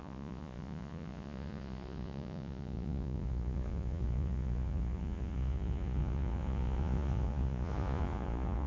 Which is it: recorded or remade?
remade